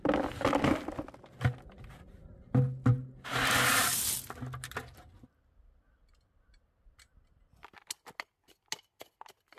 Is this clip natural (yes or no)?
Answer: yes